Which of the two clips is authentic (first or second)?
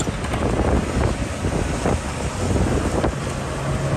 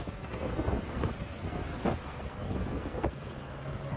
first